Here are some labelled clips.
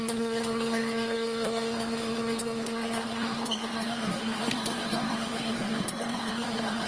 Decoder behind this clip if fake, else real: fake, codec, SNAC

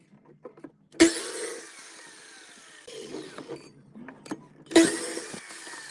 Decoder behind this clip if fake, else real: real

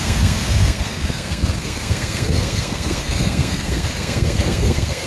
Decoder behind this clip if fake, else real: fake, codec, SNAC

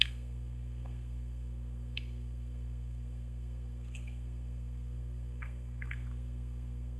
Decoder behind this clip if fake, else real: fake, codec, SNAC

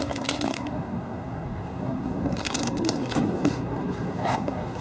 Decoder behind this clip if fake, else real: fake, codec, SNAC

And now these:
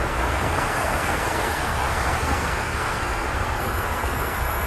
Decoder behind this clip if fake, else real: fake, codec, SNAC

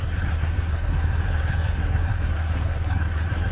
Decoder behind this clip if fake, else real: fake, codec, SNAC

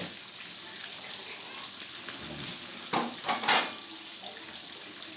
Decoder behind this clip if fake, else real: real